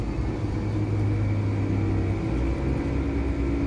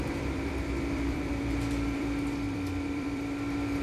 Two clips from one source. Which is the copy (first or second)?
second